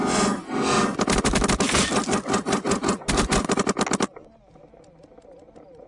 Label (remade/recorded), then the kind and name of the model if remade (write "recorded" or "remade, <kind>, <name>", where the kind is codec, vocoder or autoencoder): recorded